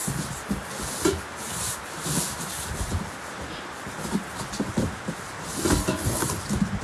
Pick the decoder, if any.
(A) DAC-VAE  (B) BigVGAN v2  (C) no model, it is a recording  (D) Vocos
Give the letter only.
C